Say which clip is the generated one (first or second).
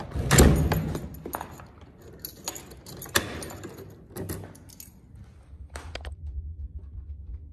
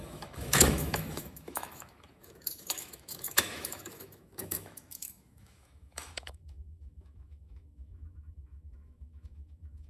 second